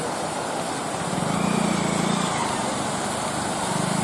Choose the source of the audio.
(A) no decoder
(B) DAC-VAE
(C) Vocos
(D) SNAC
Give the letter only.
A